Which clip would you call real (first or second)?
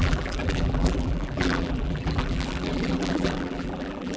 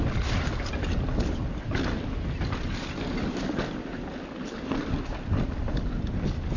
second